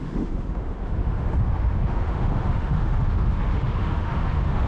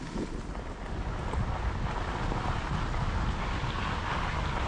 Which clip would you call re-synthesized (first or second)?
first